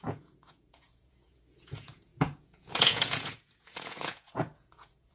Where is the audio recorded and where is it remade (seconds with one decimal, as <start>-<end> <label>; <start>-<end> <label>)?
0.0-5.1 remade